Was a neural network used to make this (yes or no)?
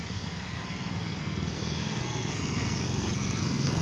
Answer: yes